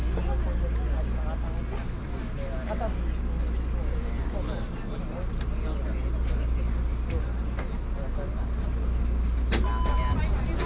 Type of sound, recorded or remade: recorded